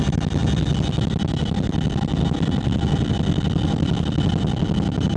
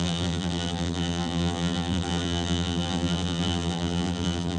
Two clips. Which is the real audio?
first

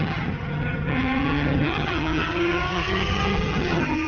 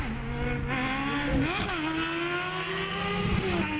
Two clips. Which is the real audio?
second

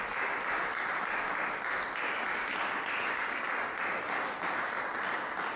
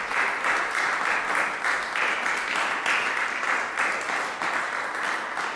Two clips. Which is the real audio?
first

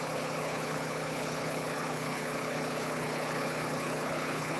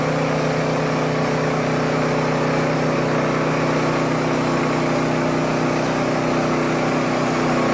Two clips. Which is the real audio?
second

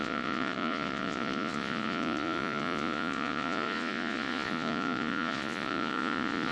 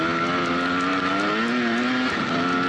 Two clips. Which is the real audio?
second